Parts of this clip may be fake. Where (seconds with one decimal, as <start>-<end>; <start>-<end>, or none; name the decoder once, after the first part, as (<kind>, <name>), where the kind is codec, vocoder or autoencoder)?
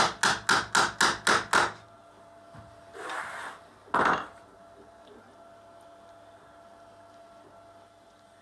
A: none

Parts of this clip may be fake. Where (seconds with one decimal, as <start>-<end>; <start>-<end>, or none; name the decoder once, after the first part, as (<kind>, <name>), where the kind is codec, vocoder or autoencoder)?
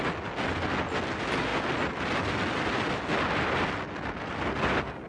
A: none